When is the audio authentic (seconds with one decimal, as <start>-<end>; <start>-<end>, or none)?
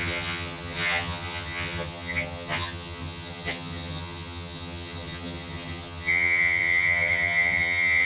none